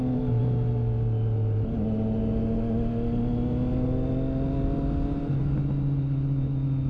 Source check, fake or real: real